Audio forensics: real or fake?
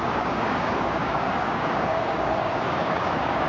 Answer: fake